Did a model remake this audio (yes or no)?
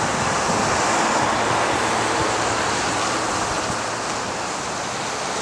no